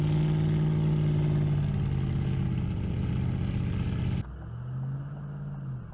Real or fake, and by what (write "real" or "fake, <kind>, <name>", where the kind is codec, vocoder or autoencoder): real